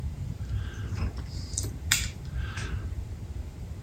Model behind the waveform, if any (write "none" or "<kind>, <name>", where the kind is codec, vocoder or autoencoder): vocoder, BigVGAN v2